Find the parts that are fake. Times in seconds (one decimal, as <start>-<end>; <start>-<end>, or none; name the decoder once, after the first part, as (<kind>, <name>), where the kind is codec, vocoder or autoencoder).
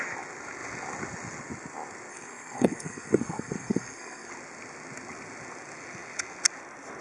2.1-4.3 (codec, SNAC)